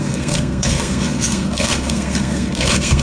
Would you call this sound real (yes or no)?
no